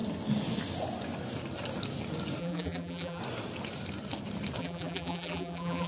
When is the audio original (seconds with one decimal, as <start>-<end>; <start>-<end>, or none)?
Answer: 0.0-2.4; 3.2-4.6